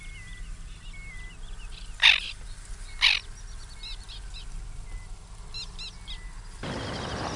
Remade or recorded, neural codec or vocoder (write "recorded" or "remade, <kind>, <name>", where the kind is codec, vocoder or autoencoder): recorded